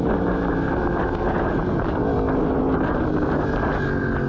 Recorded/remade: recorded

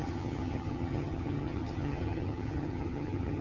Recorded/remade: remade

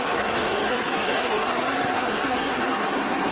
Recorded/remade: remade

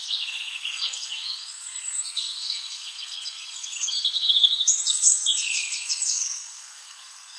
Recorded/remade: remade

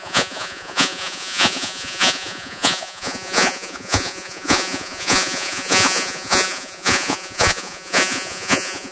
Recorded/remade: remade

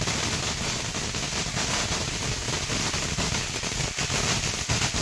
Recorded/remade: recorded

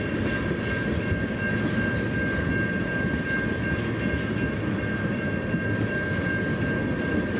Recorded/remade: recorded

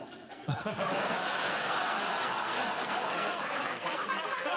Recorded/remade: remade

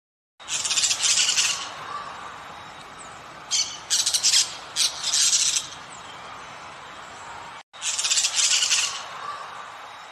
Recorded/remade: recorded